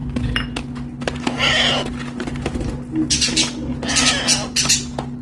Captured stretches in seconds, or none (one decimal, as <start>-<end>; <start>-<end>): 0.0-5.2